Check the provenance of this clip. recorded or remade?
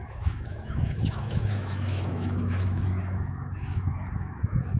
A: remade